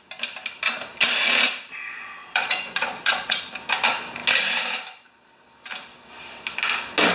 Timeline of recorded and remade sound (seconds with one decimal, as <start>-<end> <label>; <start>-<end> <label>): 0.0-2.2 recorded; 2.2-3.4 remade; 3.4-7.1 recorded